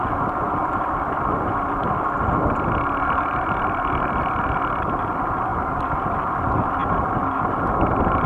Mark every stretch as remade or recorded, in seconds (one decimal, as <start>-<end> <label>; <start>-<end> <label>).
0.0-8.3 recorded